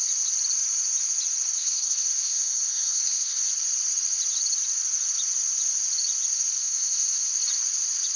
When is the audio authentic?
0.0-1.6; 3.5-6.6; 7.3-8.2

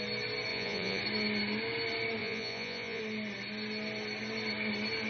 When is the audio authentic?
0.0-0.5; 1.0-2.2; 3.0-5.1